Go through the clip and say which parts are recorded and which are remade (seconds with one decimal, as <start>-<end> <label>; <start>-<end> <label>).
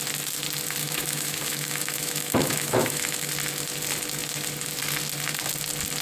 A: 0.0-0.8 recorded; 0.8-3.3 remade; 3.3-6.0 recorded